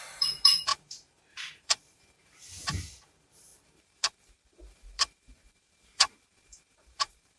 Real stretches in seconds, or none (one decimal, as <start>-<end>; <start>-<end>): none